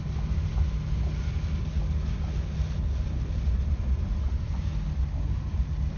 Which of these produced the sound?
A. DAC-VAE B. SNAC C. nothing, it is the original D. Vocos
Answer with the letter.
C